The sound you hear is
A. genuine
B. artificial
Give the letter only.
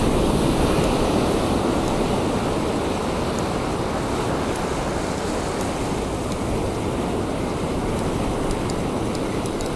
A